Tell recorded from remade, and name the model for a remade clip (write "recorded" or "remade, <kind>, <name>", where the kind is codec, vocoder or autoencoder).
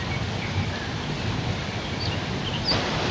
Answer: recorded